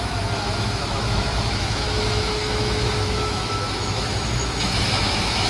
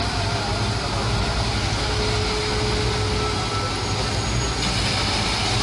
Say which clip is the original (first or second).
second